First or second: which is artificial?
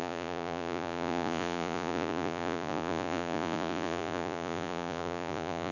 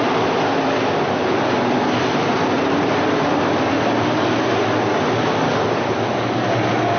first